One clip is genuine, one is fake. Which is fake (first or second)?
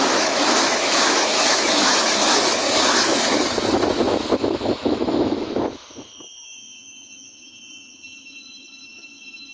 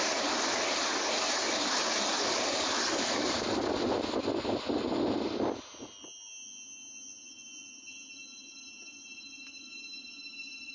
first